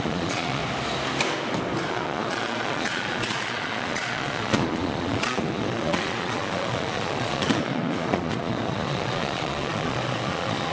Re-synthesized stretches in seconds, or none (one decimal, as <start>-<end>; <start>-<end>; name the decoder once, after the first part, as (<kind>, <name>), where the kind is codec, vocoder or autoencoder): 0.0-0.6 (vocoder, Vocos); 1.9-10.7